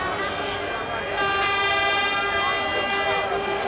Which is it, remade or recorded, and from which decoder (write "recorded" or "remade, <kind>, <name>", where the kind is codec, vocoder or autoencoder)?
recorded